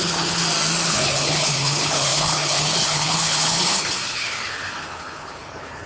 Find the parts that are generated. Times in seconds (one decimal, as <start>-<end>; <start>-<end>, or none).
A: 0.0-0.4; 0.9-5.9